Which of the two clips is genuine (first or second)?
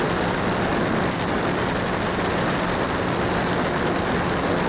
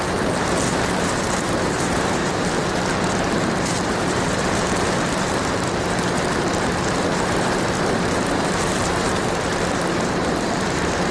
first